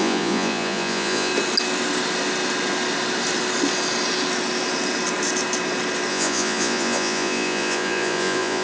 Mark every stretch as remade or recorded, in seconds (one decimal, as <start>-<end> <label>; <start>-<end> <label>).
0.0-1.3 remade; 1.3-6.1 recorded; 6.1-8.6 remade